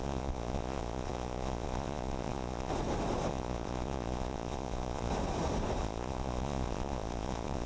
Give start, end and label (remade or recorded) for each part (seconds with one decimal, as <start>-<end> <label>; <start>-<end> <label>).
0.0-2.7 remade; 2.7-3.3 recorded; 3.3-5.1 remade; 5.1-5.8 recorded; 5.8-7.7 remade